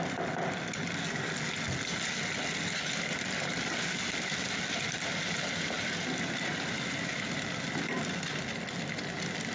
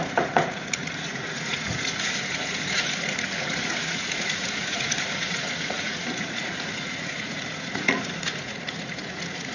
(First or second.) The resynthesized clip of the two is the second